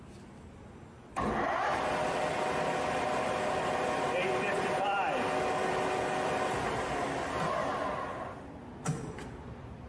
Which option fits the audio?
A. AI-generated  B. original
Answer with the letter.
B